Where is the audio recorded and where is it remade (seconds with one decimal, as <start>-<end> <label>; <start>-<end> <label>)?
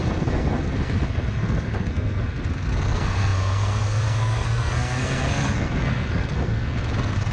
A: 0.0-7.3 remade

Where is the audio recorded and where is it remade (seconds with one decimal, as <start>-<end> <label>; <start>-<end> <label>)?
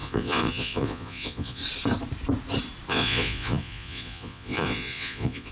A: 0.0-1.6 remade; 1.6-2.9 recorded; 2.9-5.5 remade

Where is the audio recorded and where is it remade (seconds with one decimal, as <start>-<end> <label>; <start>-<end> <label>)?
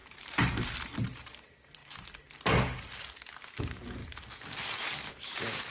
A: 0.0-1.8 remade; 1.8-3.6 recorded; 3.6-4.0 remade; 4.0-5.1 recorded; 5.1-5.7 remade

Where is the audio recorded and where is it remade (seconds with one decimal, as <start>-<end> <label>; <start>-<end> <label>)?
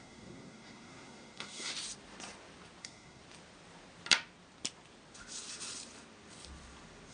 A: 0.0-1.7 remade; 1.7-2.8 recorded; 2.8-3.2 remade; 3.2-7.1 recorded